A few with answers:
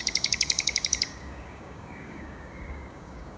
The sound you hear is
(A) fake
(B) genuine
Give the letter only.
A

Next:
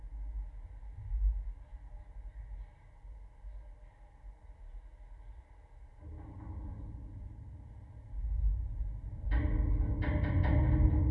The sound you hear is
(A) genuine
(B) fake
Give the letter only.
A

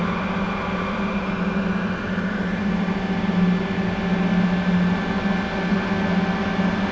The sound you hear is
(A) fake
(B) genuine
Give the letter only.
B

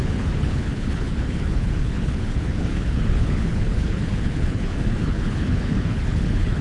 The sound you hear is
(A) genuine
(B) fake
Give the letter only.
B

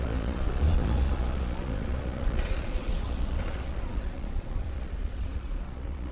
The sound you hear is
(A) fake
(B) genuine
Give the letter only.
A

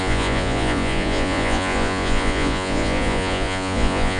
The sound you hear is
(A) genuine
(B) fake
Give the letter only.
B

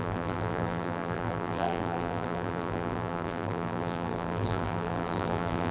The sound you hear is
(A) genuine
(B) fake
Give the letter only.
B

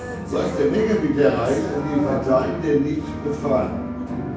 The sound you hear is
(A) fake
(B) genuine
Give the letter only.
A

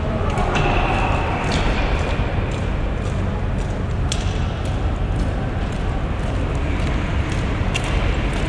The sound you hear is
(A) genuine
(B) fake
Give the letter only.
A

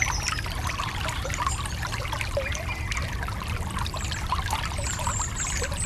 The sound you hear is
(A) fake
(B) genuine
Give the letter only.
B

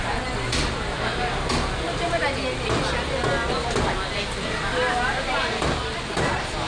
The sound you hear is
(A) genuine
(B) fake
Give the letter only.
A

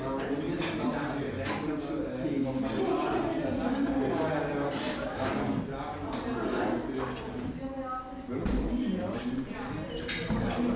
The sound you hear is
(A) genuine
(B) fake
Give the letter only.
A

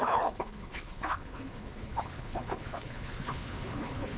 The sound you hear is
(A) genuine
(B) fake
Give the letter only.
B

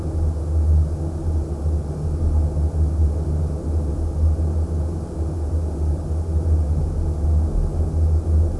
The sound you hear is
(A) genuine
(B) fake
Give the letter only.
A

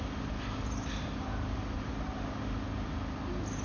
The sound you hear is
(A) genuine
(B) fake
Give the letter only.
A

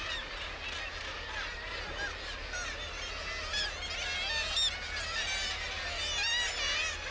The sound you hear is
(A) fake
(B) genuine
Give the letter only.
B